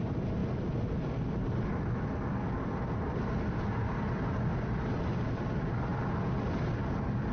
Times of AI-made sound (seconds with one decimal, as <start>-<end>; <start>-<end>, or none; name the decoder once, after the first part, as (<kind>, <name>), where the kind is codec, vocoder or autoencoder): none